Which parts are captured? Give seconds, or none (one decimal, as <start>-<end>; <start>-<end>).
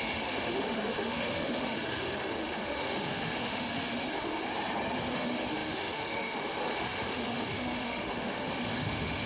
4.5-5.1